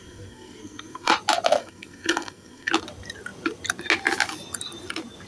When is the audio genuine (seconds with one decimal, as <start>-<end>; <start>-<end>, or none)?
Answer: 1.1-1.6; 2.7-5.3